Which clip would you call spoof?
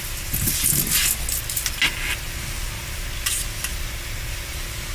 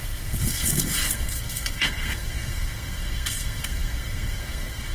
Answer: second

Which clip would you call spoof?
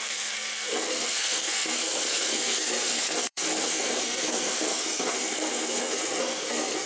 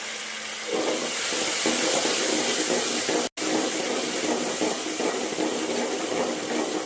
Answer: first